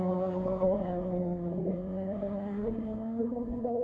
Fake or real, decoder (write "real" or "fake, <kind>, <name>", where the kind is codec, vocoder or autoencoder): fake, codec, SNAC